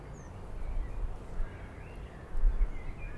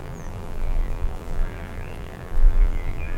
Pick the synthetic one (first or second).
second